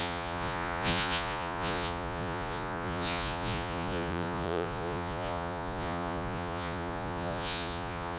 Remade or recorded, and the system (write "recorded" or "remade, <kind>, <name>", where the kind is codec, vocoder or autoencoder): remade, vocoder, Vocos